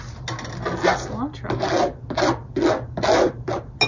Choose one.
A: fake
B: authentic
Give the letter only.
B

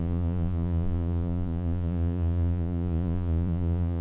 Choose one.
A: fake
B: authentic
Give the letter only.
A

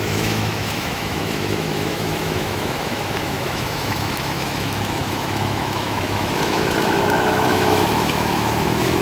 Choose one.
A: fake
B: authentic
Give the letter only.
A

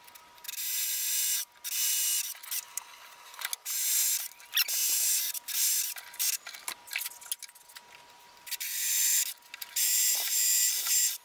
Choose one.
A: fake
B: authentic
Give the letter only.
B